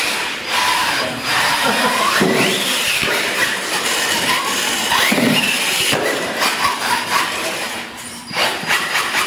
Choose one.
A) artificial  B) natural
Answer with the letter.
A